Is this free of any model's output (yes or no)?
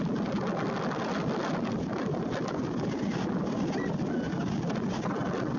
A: yes